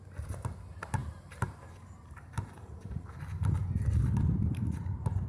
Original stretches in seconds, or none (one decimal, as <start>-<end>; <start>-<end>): 0.0-1.0; 3.2-5.3